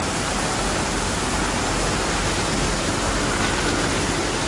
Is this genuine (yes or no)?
yes